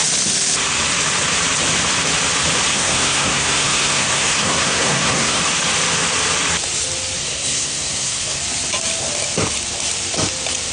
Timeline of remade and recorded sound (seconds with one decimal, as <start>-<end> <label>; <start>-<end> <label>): 0.0-2.7 recorded; 2.7-5.4 remade; 5.4-7.2 recorded; 7.2-8.4 remade; 8.4-10.7 recorded